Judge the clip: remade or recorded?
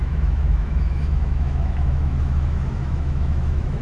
remade